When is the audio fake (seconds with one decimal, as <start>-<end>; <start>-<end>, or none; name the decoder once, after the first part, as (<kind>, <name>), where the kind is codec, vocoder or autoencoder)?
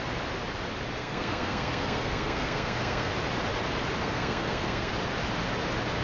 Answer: 1.0-3.1 (codec, SNAC); 4.0-4.9